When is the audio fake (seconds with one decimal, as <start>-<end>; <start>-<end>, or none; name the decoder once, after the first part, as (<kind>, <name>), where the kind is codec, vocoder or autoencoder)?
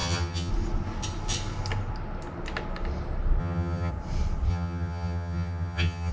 0.0-0.5 (vocoder, HiFi-GAN); 3.4-3.9; 4.5-6.1